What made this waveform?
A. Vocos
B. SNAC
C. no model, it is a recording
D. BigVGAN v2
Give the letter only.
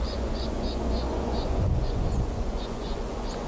A